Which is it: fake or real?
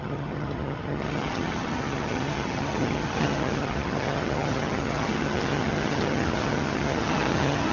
fake